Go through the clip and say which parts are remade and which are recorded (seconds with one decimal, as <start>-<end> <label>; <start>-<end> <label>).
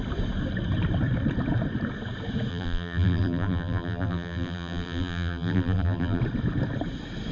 0.0-2.5 recorded; 2.5-6.2 remade; 6.2-7.3 recorded